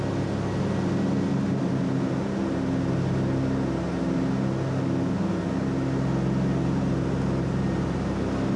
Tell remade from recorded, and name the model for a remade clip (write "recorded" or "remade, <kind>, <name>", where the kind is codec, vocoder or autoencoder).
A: recorded